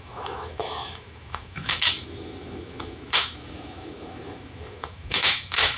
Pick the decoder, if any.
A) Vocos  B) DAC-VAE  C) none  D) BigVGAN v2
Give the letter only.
B